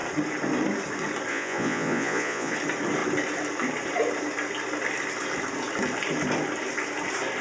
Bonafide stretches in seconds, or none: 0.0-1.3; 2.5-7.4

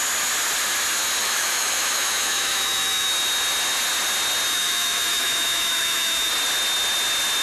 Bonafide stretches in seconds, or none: 0.0-1.2; 3.1-4.5; 6.3-7.4

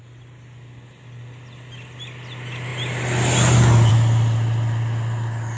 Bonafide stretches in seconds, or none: 0.0-5.6

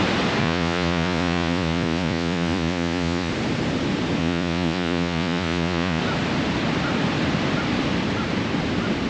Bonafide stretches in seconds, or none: 0.0-0.4; 3.3-4.2; 6.0-9.1

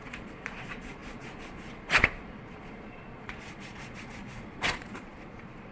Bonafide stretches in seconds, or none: none

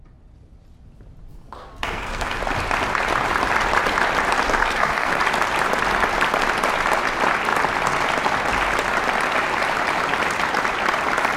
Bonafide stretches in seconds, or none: 0.0-1.3; 2.4-4.6; 5.2-11.4